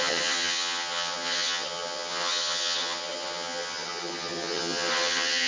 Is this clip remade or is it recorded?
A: remade